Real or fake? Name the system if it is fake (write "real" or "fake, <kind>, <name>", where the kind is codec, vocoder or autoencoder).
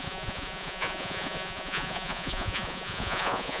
fake, vocoder, Vocos